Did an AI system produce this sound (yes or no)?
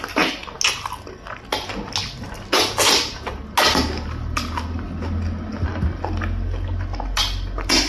no